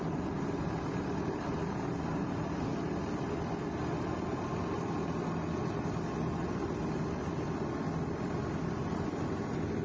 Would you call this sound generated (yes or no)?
no